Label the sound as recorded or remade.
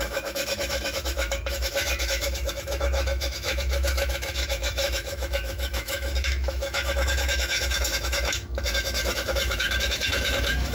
remade